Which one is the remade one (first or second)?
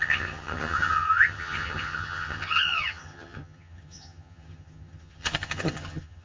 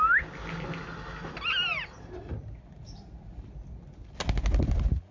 first